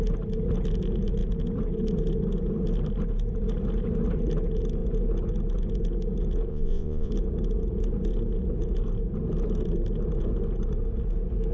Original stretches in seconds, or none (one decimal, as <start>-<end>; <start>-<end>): 0.0-6.5; 7.1-11.5